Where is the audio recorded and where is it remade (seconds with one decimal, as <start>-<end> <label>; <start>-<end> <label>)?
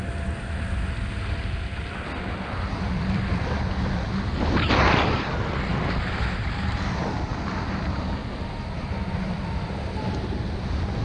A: 0.0-11.0 recorded